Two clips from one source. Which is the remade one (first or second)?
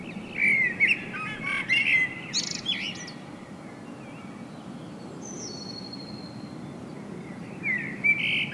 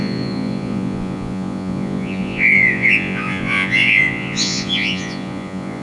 second